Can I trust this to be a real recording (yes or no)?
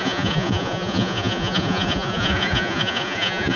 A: no